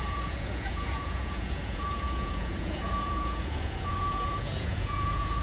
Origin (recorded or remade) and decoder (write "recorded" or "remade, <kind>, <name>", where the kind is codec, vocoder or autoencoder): remade, vocoder, Vocos